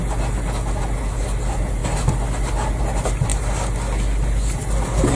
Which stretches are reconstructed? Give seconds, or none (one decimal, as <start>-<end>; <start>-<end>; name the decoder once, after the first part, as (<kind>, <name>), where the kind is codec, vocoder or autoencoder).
none